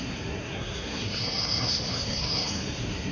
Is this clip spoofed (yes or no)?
yes